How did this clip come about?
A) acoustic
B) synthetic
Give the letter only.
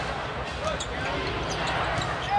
A